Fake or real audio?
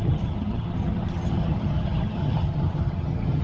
fake